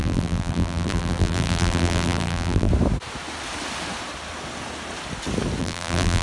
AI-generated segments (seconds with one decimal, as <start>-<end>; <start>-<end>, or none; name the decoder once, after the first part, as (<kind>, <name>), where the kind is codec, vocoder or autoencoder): 0.0-2.7 (vocoder, BigVGAN v2); 5.6-6.2